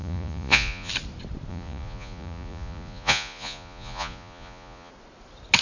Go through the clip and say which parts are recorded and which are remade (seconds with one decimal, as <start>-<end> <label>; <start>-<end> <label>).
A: 0.0-0.9 remade; 0.9-1.5 recorded; 1.5-4.9 remade; 4.9-5.6 recorded